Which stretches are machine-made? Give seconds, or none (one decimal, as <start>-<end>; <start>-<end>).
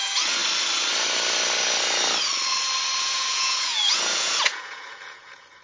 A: 0.0-0.4; 3.0-5.6